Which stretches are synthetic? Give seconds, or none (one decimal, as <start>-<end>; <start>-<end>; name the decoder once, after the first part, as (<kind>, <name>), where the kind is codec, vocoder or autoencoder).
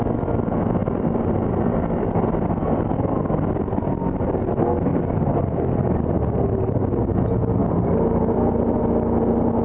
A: 0.8-3.6 (vocoder, BigVGAN v2); 4.9-5.9; 7.6-8.8